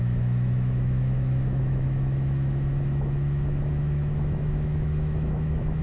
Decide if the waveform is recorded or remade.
remade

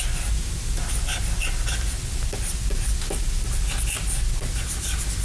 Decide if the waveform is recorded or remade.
recorded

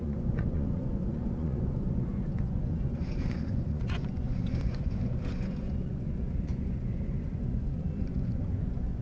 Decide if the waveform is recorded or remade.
remade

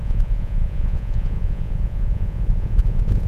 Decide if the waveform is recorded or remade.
remade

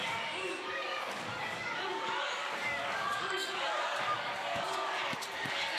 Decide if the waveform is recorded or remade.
remade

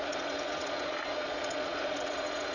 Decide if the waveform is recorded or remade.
remade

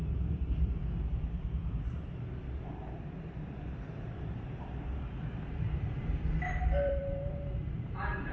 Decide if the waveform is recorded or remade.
remade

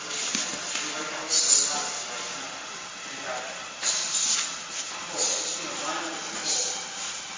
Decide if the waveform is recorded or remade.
recorded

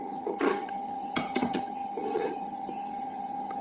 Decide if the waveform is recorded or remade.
remade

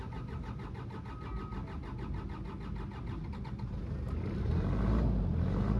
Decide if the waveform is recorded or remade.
recorded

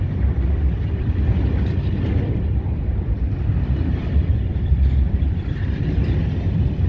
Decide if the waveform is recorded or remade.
remade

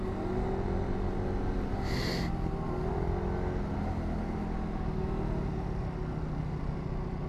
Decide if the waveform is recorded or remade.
recorded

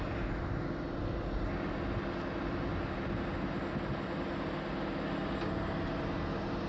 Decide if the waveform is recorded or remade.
recorded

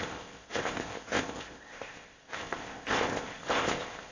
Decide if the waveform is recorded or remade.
remade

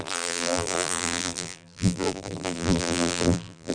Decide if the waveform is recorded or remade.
remade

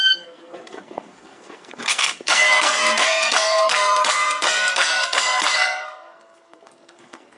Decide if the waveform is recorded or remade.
remade